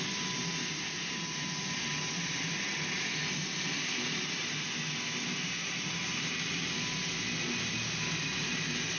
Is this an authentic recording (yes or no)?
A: yes